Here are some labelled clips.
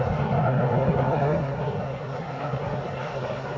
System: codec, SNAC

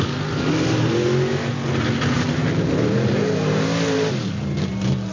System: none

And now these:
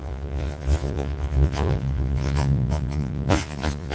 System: vocoder, Vocos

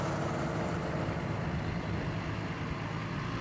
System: none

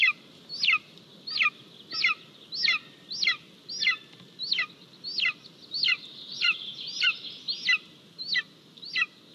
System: none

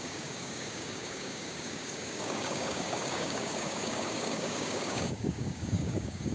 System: codec, DAC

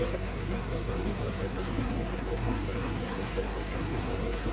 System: codec, SNAC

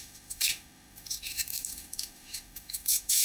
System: autoencoder, DAC-VAE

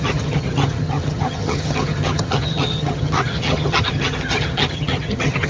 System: vocoder, HiFi-GAN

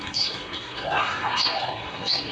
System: codec, SNAC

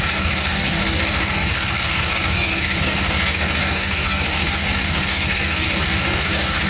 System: codec, DAC